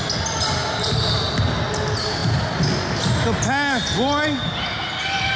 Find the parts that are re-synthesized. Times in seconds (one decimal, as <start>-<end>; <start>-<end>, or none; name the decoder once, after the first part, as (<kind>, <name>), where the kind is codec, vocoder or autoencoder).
none